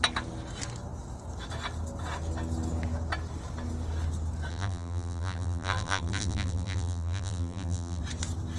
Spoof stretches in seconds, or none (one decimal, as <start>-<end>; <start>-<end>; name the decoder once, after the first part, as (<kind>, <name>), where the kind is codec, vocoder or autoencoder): 4.5-8.0 (vocoder, BigVGAN v2)